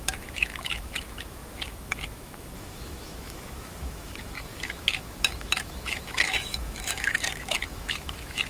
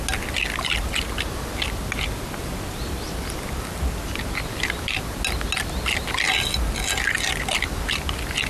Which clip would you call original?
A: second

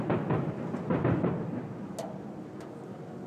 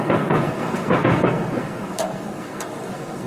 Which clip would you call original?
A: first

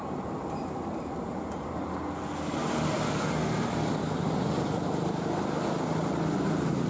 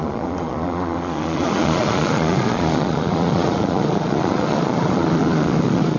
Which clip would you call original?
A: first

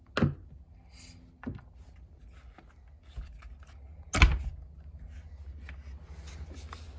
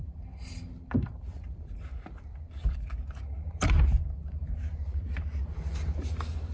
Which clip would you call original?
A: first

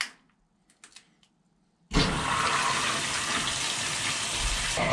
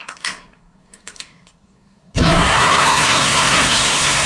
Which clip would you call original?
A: first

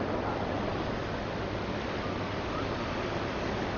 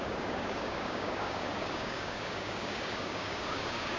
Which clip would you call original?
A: first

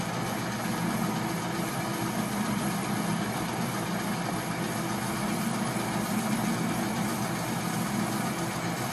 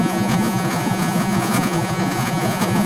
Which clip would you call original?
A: first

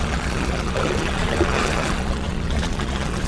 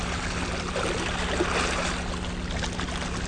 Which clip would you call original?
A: second